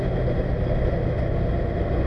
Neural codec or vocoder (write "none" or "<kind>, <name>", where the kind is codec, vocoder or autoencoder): none